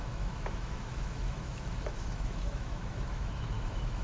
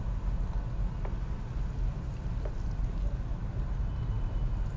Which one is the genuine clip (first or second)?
second